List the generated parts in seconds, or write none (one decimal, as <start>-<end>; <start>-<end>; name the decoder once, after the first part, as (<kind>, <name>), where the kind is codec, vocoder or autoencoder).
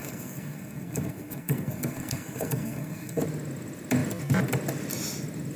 0.0-3.2 (codec, SNAC)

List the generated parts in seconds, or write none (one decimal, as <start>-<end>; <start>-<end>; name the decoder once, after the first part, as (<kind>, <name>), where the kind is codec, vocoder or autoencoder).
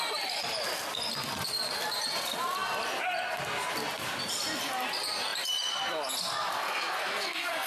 6.5-7.7 (codec, SNAC)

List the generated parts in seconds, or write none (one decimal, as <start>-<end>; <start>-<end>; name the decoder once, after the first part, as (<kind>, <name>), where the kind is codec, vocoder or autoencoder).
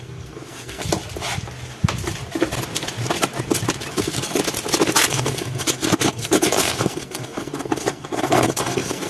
0.0-0.8 (codec, SNAC); 3.9-4.4; 5.1-9.1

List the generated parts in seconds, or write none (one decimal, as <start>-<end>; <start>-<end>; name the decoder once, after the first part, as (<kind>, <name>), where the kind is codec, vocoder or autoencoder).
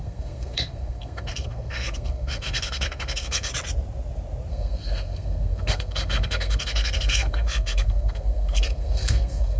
0.0-3.5 (codec, SNAC); 4.5-9.6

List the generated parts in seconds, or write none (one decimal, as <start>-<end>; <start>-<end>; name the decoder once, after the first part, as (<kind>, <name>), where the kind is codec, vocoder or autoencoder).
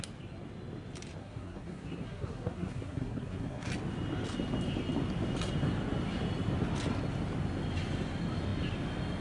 1.2-3.7 (codec, SNAC)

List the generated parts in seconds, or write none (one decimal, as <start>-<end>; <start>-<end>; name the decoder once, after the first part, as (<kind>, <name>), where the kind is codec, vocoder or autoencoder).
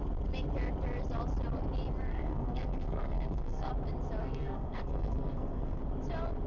2.1-3.7 (codec, SNAC); 4.2-5.8